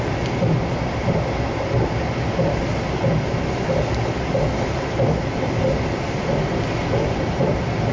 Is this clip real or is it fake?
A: real